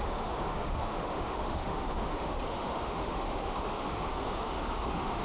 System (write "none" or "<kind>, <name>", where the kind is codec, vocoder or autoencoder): autoencoder, DAC-VAE